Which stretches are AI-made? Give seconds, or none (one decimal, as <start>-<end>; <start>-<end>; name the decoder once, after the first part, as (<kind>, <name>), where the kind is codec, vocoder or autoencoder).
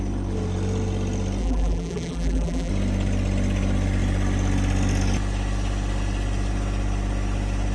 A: 1.4-2.7 (vocoder, BigVGAN v2)